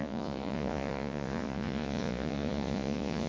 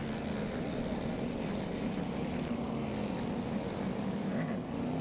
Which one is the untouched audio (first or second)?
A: second